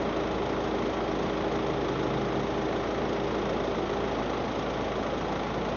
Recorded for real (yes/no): yes